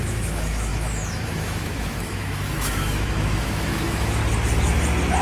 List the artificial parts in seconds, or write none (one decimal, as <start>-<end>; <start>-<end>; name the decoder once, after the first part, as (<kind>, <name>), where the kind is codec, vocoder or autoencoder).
0.0-4.2 (autoencoder, DAC-VAE)